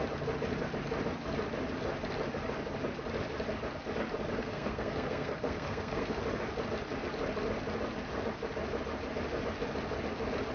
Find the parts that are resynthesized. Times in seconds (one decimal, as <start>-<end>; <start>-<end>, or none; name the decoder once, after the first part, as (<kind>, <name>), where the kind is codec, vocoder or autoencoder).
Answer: 4.4-6.2 (codec, SNAC)